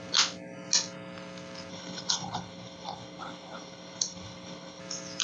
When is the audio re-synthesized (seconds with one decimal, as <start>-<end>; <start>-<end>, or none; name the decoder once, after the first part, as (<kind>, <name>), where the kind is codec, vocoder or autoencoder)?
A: 1.7-4.8 (codec, HILCodec)